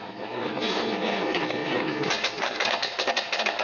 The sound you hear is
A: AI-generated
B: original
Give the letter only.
A